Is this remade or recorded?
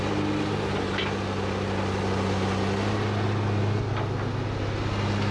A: recorded